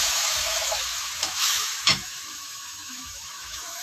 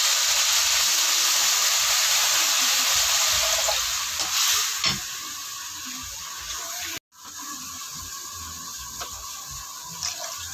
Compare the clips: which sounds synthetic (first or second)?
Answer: first